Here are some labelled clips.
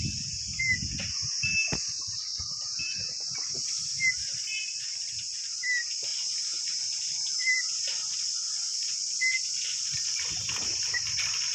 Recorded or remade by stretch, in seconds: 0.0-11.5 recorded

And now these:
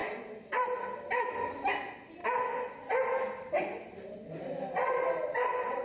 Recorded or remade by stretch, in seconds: 0.0-5.8 recorded

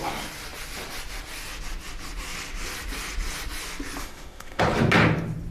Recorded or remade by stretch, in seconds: 0.0-4.0 recorded; 4.0-4.6 remade; 4.6-5.5 recorded

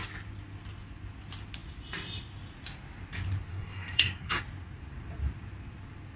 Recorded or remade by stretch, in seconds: 0.0-3.5 recorded; 3.5-4.4 remade; 4.4-6.2 recorded

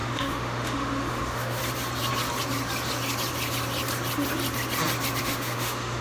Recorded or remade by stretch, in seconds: 0.0-1.6 remade; 1.6-5.2 recorded; 5.2-6.0 remade